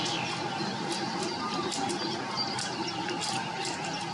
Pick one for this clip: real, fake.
real